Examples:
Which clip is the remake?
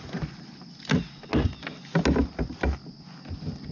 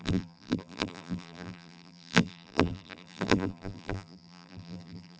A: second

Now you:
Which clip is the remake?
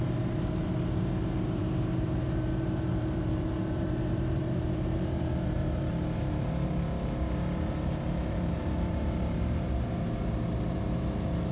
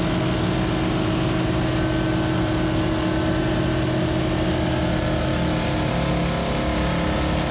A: first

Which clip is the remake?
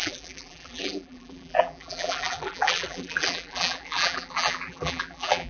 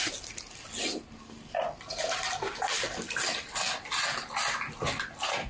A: first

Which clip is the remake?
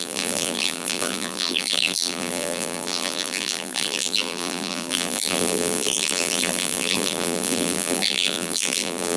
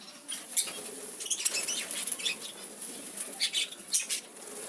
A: first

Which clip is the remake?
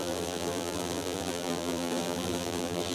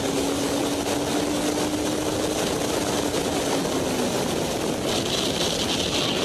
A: first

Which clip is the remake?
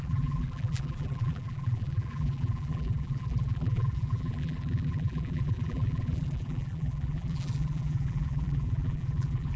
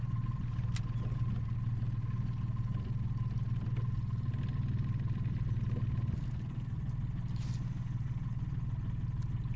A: first